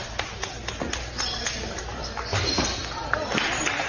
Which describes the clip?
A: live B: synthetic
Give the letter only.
A